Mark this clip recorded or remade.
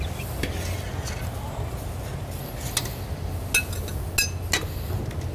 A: recorded